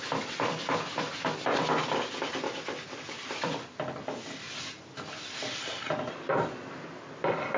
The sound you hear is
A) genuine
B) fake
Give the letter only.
A